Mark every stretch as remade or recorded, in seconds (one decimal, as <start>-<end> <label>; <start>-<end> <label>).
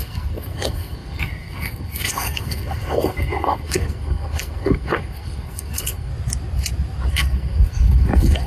0.0-6.1 remade; 6.1-7.1 recorded; 7.1-8.5 remade